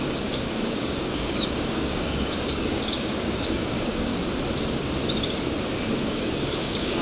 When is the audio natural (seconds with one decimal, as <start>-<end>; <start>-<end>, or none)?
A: 4.1-5.9